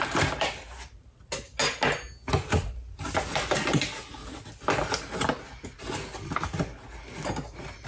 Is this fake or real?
real